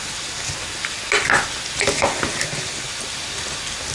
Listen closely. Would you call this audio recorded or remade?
recorded